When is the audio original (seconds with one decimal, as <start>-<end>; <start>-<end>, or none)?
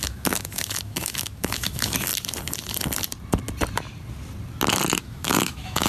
2.1-5.0